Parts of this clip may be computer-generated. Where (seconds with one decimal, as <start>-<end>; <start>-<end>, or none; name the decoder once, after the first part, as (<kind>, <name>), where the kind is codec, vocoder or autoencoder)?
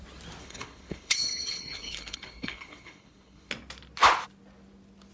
0.4-3.5 (codec, HILCodec)